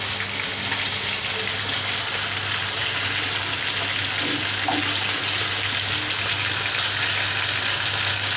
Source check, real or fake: real